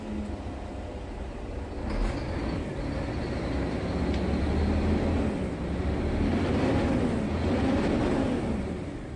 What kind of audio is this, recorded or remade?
recorded